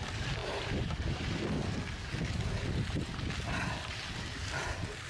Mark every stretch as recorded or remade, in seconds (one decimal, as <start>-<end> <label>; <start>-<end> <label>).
0.0-0.4 recorded; 0.4-1.4 remade; 1.4-5.1 recorded